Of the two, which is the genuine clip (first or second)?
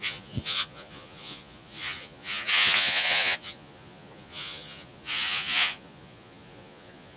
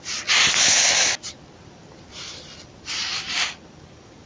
second